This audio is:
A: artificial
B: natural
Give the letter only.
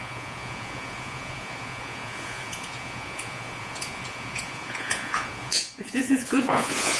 A